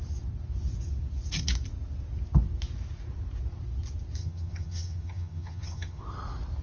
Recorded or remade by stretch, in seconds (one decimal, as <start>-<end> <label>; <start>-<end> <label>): 0.0-4.2 recorded; 4.2-6.0 remade; 6.0-6.6 recorded